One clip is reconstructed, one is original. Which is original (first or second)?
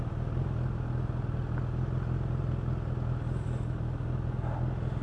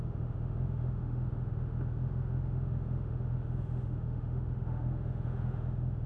first